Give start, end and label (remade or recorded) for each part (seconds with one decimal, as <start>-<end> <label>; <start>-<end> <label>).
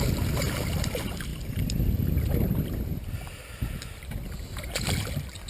0.0-5.5 recorded